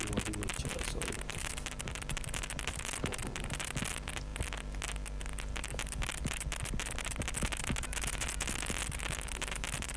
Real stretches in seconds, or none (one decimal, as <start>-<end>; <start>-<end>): 0.0-0.7; 1.5-10.0